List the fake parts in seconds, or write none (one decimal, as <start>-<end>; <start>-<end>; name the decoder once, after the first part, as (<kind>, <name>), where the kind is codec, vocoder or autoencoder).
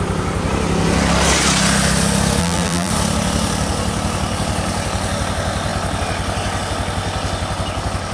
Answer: 2.4-2.9 (vocoder, BigVGAN v2)